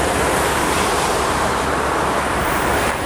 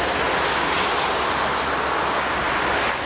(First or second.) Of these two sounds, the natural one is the second